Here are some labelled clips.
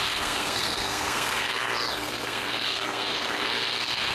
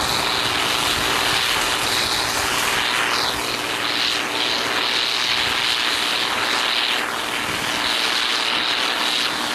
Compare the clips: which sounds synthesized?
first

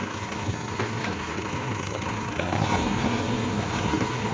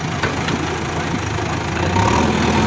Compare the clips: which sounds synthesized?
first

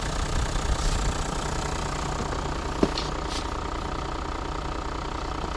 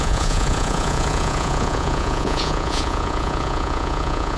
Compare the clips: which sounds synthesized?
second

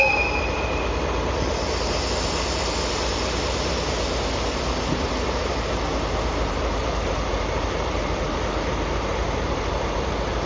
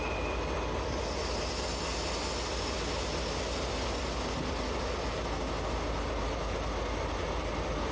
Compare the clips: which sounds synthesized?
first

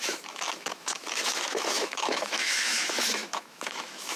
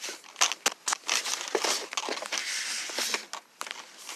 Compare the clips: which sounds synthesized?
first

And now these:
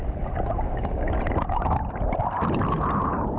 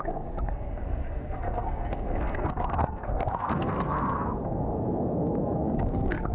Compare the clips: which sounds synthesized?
second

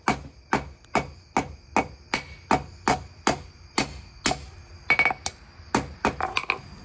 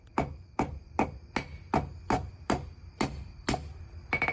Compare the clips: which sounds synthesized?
second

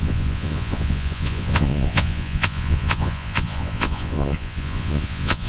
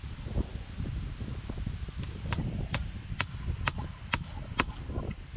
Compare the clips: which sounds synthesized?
first